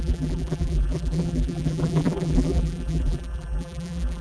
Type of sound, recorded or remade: remade